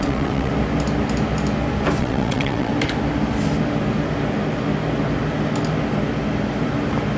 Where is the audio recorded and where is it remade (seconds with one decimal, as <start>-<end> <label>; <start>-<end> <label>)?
0.0-0.5 remade; 0.5-2.0 recorded; 2.0-2.7 remade; 2.7-7.2 recorded